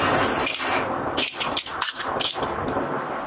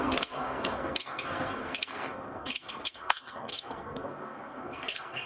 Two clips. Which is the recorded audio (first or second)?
first